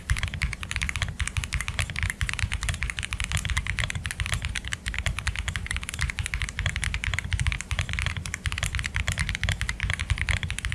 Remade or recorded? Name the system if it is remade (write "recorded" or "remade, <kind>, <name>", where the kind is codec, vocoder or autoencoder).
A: recorded